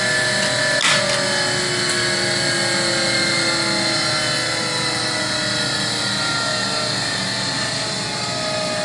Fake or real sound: real